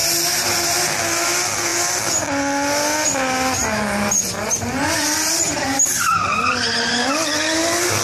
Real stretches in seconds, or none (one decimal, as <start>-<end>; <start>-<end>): 0.0-8.0